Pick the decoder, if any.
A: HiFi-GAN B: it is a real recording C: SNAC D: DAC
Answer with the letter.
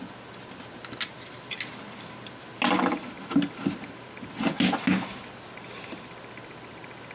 B